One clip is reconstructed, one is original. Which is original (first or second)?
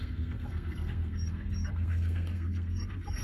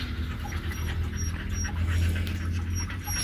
second